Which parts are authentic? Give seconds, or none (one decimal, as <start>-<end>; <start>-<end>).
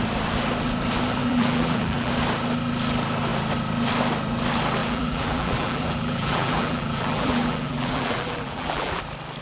0.0-1.2; 2.1-4.8; 9.0-9.4